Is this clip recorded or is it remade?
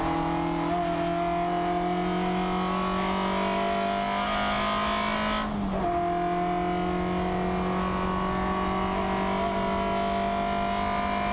recorded